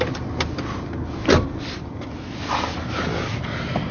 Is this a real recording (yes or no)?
yes